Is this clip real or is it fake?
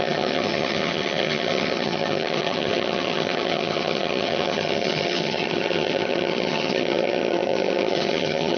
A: fake